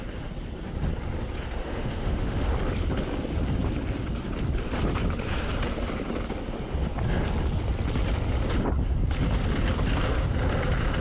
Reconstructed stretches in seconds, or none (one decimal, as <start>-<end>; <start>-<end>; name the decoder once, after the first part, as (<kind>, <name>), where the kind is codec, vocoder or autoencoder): 1.6-2.5 (autoencoder, DAC-VAE)